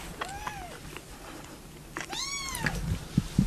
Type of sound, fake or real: real